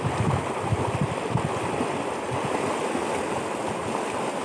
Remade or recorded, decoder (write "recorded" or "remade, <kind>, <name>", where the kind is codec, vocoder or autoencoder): recorded